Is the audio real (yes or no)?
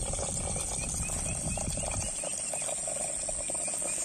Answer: yes